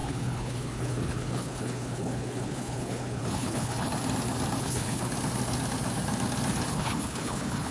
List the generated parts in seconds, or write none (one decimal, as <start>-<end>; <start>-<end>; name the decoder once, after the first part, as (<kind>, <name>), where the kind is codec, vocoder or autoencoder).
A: 0.0-3.9 (codec, HILCodec); 4.6-5.1; 6.7-7.7

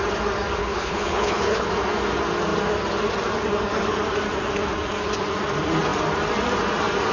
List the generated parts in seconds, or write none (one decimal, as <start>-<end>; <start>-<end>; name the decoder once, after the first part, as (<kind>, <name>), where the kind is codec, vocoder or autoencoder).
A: 0.6-1.7 (codec, HILCodec)

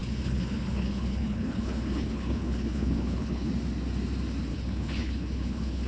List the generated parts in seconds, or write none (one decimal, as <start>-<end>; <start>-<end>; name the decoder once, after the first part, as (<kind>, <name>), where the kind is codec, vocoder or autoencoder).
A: 0.0-3.5 (codec, HILCodec); 4.5-5.9

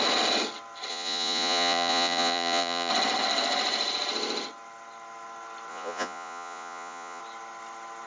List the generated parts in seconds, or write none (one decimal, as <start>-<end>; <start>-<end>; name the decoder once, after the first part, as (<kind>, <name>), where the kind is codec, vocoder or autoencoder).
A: 0.9-2.9 (vocoder, Vocos); 5.7-7.2

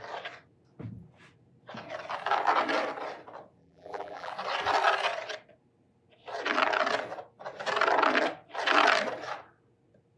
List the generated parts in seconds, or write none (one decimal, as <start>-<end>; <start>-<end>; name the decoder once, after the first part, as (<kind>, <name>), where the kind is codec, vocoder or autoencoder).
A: 3.6-4.3 (vocoder, BigVGAN v2)

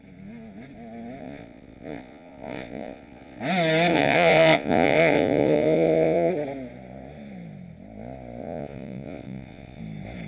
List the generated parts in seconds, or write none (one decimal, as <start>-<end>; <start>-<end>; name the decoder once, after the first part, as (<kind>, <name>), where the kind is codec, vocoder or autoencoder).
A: 1.2-3.4 (vocoder, Vocos); 3.9-6.3; 8.4-9.8